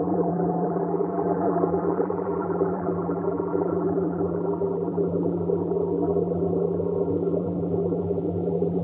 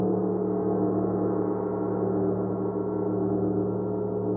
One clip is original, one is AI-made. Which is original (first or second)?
second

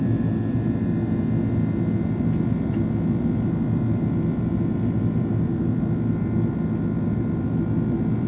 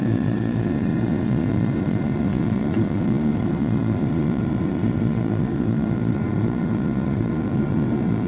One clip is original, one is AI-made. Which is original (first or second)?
first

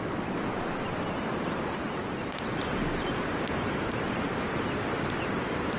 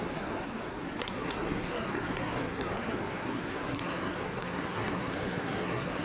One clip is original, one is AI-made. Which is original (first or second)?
first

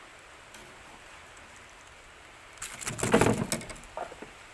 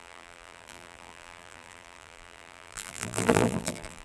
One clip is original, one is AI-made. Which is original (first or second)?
first